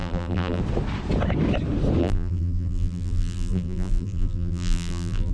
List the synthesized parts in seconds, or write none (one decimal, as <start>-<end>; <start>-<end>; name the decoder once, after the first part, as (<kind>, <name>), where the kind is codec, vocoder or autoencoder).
0.0-0.6 (vocoder, BigVGAN v2); 2.0-5.3